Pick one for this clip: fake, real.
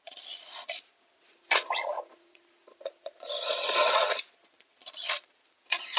fake